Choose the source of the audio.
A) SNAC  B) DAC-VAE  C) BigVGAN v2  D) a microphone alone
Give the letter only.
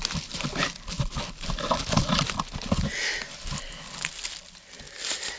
D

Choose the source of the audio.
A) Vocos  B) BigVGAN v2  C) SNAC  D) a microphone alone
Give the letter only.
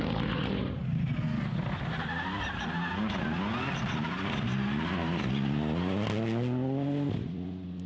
D